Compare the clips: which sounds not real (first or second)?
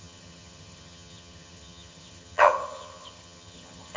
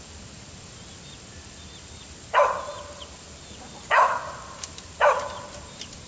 first